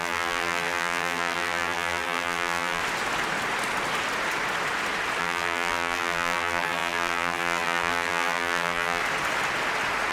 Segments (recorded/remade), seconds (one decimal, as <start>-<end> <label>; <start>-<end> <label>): 0.0-2.8 remade; 2.8-5.2 recorded; 5.2-9.0 remade; 9.0-10.1 recorded